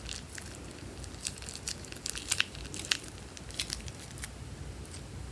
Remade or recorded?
recorded